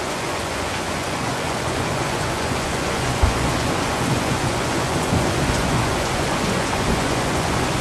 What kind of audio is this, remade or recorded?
remade